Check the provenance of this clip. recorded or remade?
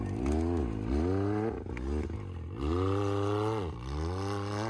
recorded